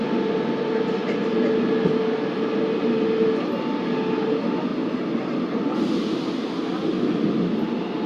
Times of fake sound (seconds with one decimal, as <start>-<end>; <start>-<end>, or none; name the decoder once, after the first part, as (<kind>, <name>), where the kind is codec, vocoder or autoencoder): none